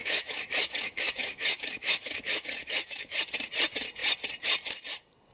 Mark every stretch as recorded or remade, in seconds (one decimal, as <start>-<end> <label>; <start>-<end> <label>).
0.0-3.2 remade; 3.2-5.3 recorded